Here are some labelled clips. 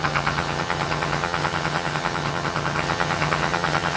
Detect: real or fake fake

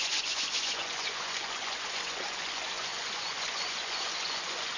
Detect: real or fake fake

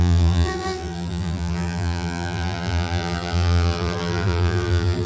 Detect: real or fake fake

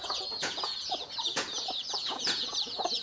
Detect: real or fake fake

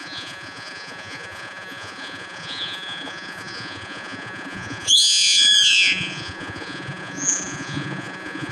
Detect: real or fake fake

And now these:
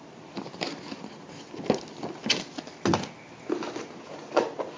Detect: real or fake real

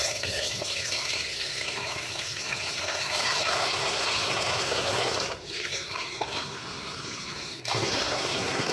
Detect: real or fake fake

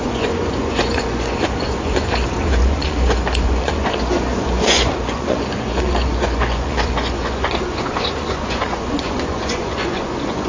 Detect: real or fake fake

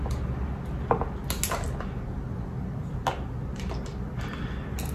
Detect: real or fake real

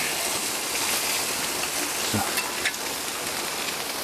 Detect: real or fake real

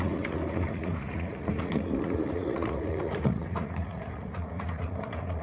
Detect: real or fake fake